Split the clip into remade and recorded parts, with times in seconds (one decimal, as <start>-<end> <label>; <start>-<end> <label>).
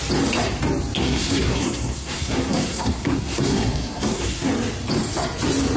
0.0-1.0 recorded; 1.0-4.5 remade; 4.5-5.8 recorded